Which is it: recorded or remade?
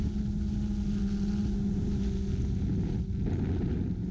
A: recorded